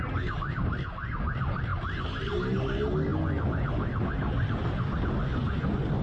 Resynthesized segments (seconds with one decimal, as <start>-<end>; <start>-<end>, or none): none